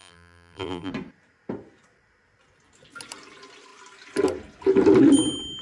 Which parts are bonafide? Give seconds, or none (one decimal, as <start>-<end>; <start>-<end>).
0.9-5.6